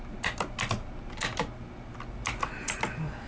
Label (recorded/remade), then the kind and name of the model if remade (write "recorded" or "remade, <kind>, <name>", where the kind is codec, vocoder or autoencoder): recorded